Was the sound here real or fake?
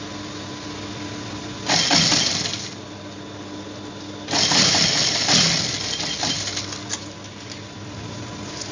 real